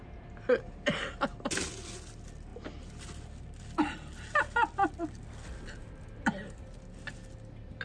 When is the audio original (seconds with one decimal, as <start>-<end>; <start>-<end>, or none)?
0.0-7.8